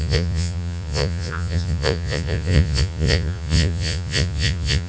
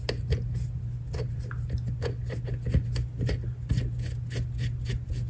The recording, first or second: second